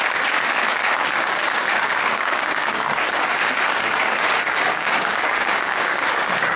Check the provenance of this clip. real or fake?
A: fake